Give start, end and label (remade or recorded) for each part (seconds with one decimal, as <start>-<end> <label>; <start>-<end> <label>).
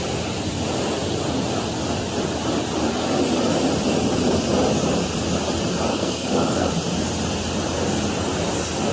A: 0.0-5.9 recorded; 5.9-6.7 remade; 6.7-8.9 recorded